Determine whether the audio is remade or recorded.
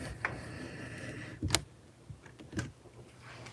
recorded